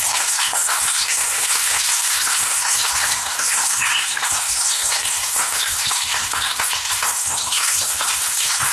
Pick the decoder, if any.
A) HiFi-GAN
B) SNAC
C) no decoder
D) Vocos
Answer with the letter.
B